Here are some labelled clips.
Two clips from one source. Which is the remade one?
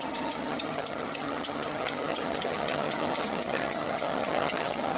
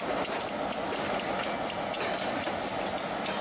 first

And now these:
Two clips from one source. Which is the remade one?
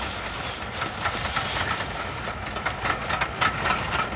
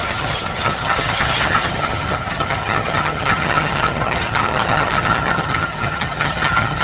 second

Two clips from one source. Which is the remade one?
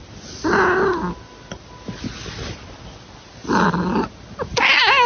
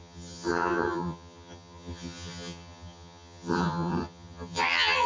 second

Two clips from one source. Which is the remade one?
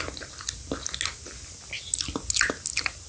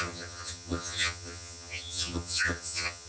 second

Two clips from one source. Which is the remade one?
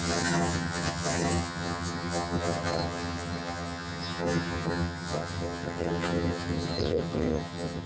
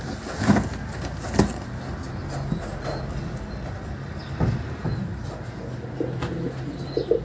first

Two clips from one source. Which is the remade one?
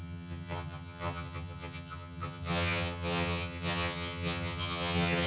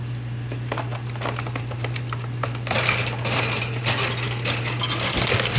first